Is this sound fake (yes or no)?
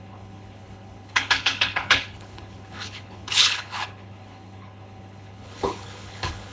yes